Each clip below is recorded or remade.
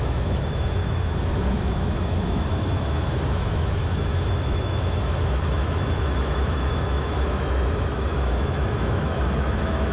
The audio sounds remade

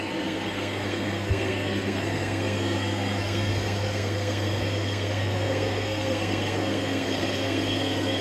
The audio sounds remade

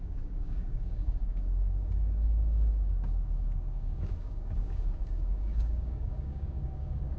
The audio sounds remade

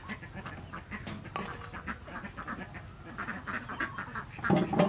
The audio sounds recorded